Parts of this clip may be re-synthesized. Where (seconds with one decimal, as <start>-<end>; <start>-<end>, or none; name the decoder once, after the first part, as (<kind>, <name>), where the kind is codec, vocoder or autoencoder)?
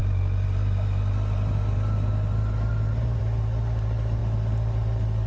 none